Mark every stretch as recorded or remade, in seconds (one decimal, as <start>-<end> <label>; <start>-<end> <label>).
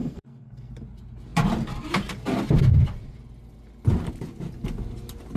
0.0-0.7 remade; 0.7-5.4 recorded